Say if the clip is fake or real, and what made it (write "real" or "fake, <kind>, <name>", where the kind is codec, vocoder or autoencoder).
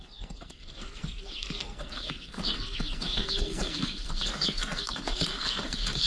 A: fake, codec, SNAC